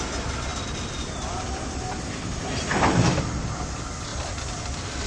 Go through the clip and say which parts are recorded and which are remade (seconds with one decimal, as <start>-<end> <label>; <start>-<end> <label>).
0.0-4.1 recorded; 4.1-5.1 remade